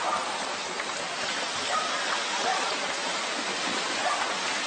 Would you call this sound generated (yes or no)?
no